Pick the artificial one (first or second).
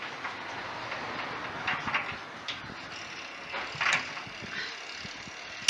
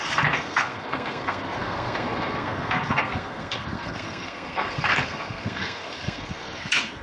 second